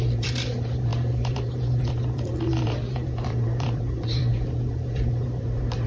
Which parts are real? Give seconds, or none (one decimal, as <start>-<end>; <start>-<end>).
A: none